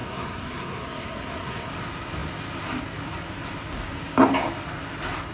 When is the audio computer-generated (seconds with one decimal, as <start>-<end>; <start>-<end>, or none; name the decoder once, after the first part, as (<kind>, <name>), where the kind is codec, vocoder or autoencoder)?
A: 0.0-1.7 (codec, SNAC)